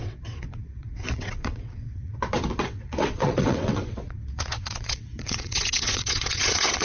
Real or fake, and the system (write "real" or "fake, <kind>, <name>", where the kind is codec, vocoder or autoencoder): fake, vocoder, WaveNeXt